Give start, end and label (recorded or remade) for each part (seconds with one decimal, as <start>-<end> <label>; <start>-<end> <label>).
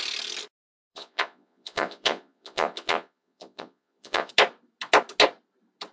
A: 0.0-0.9 recorded; 0.9-4.3 remade; 4.3-5.9 recorded